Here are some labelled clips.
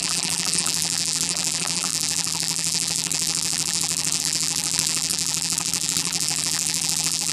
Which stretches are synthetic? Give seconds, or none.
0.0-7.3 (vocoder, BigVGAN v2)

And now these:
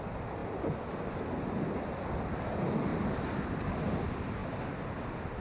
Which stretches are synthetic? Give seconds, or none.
none

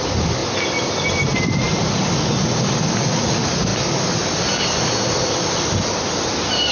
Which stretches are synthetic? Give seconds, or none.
none

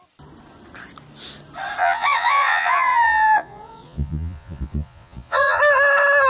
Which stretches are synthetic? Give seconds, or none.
1.8-5.6 (vocoder, Vocos)

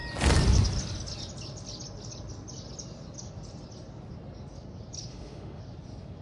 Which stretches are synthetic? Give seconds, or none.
5.1-5.6 (autoencoder, DAC-VAE)

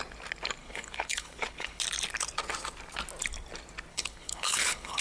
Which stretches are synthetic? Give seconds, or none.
0.6-1.8 (codec, HILCodec); 3.9-5.0

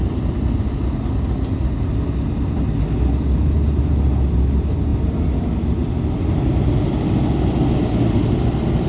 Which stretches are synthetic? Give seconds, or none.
none